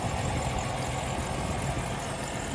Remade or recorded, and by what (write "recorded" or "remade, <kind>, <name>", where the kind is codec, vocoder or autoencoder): recorded